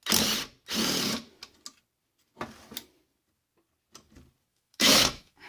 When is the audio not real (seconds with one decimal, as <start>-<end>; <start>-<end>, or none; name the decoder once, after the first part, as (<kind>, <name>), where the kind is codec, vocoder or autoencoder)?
4.5-5.5 (autoencoder, DAC-VAE)